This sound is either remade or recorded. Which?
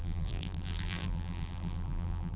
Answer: remade